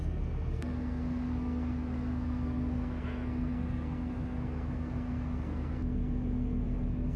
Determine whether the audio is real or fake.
fake